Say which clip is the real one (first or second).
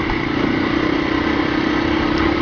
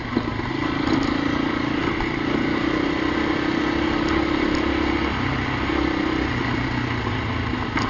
second